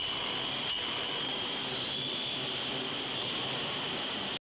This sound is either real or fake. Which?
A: real